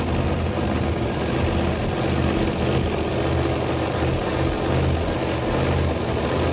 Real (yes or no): yes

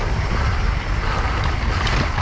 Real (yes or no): no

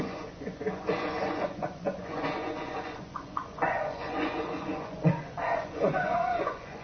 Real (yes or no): no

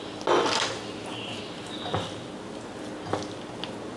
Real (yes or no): yes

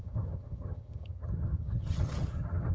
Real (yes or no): no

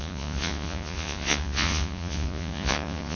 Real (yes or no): no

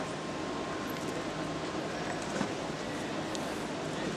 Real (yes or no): yes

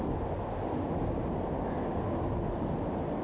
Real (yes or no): yes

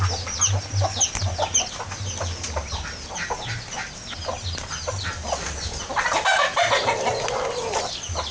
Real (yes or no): yes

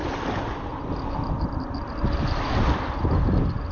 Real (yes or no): yes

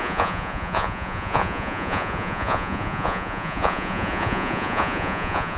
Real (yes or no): no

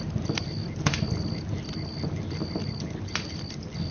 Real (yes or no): yes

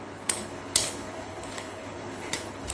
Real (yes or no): no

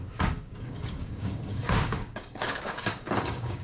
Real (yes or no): no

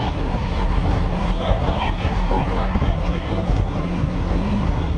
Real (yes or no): no